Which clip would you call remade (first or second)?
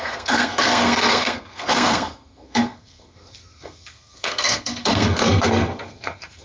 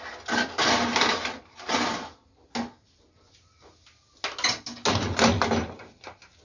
first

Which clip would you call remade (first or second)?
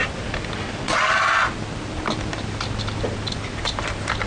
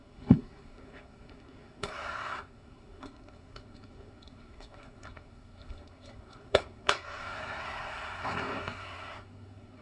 second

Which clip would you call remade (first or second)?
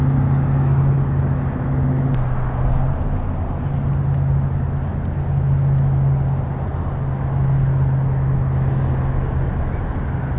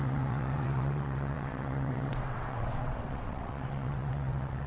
second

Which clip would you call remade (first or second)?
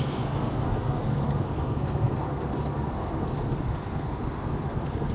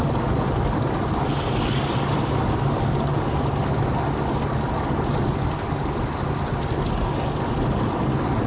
first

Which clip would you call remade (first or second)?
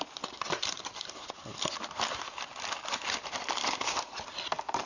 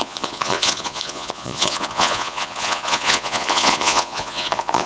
second